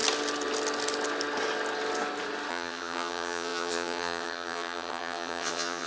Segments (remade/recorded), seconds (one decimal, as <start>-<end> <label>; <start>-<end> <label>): 0.0-2.5 recorded; 2.5-5.9 remade